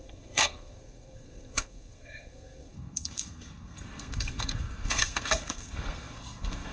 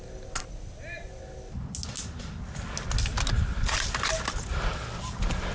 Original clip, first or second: second